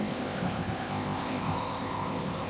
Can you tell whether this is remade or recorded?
remade